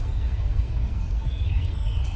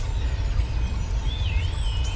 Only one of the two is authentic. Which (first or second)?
second